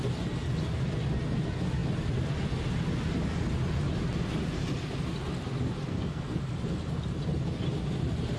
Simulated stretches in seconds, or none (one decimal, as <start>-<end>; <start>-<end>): 5.9-6.4